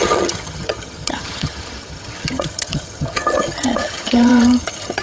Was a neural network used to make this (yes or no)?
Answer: yes